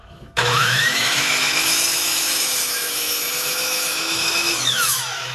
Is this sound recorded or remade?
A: remade